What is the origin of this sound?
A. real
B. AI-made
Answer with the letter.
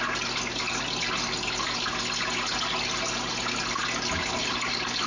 A